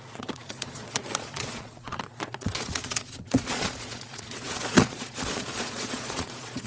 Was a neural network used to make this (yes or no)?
yes